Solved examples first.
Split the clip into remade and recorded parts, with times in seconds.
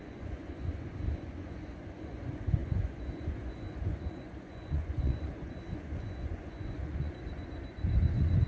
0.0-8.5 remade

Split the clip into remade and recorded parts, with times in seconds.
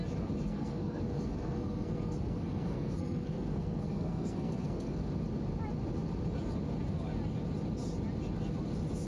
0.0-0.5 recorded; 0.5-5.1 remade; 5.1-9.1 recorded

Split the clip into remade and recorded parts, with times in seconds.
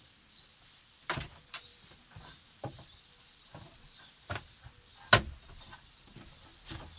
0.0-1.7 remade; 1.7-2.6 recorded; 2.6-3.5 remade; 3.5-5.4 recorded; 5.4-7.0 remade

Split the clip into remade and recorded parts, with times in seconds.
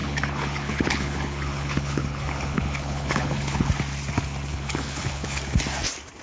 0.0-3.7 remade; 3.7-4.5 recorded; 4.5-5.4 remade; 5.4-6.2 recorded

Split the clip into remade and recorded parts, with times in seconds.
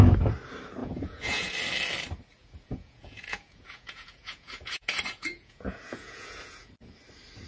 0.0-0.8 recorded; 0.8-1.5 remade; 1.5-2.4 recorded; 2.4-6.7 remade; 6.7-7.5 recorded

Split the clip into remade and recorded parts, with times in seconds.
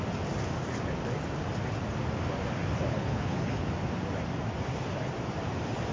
0.0-2.9 recorded; 2.9-3.7 remade; 3.7-5.9 recorded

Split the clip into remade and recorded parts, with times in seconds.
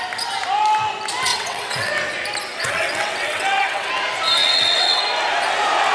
0.0-1.3 recorded; 1.3-1.9 remade; 1.9-2.5 recorded; 2.5-3.9 remade; 3.9-4.4 recorded; 4.4-5.0 remade; 5.0-5.9 recorded